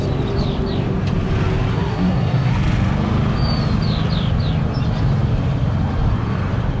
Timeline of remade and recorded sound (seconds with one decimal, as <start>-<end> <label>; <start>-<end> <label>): 0.0-1.7 recorded; 1.7-2.5 remade; 2.5-6.8 recorded